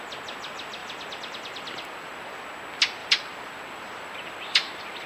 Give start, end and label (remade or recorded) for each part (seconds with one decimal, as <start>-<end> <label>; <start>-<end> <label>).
0.0-0.8 recorded; 0.8-2.3 remade; 2.3-3.0 recorded; 3.0-5.1 remade